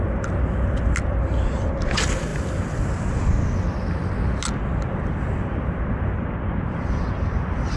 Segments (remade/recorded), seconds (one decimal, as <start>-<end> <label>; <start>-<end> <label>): 0.0-7.8 recorded